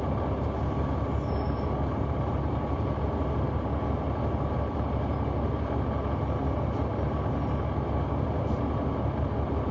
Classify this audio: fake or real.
real